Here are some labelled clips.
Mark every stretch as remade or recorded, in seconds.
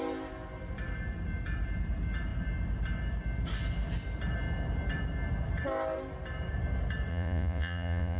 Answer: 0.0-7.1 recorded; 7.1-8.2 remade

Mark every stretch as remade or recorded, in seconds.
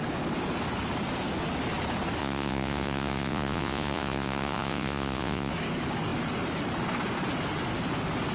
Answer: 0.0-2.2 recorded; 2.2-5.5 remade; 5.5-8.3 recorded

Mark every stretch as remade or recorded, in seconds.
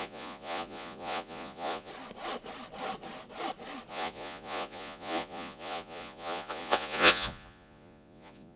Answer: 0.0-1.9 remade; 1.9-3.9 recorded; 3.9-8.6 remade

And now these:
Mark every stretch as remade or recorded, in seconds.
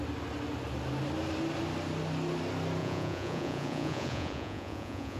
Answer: 0.0-2.8 recorded; 2.8-5.2 remade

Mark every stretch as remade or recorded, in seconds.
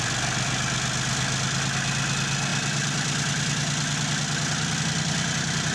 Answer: 0.0-5.7 recorded